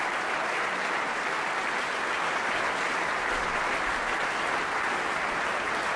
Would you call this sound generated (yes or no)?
no